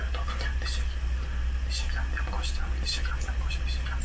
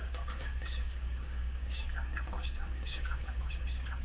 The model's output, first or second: second